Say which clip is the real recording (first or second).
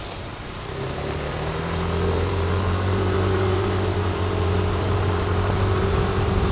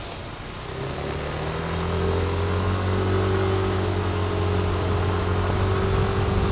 second